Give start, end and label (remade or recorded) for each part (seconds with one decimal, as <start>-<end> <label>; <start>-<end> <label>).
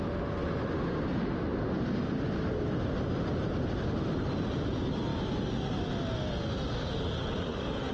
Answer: 0.0-7.9 recorded